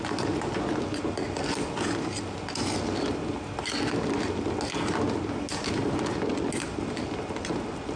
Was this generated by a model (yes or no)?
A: no